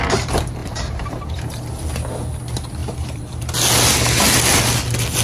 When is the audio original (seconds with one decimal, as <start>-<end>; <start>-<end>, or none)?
0.0-0.6; 1.9-2.8; 3.4-5.2